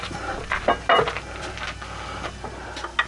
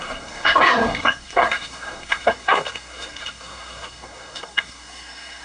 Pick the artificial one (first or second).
second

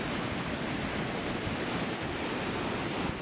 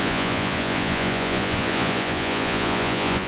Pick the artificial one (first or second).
second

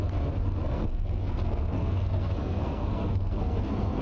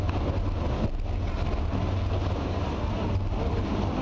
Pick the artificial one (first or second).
first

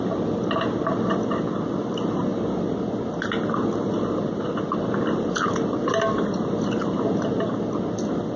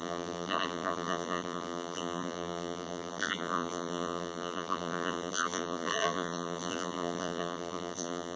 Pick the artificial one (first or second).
second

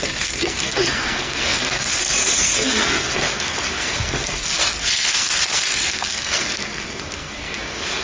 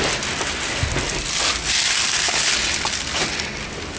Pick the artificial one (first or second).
first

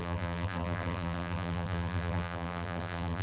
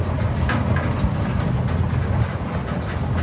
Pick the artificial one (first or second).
first